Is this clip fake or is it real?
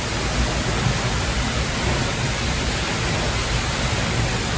real